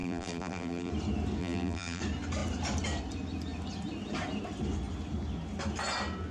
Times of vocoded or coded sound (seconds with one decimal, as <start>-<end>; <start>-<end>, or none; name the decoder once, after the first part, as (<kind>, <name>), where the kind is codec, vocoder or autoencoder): 0.0-0.9 (vocoder, BigVGAN v2); 1.4-2.0